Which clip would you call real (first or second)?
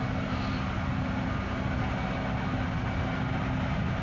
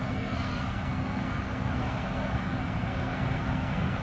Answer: first